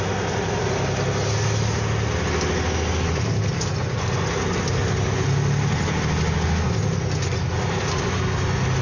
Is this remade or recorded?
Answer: recorded